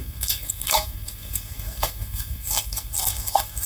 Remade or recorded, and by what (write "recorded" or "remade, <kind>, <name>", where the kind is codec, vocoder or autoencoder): remade, codec, SNAC